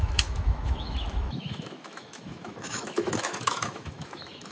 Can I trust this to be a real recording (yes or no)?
no